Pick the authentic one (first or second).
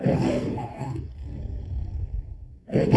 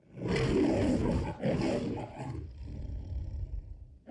second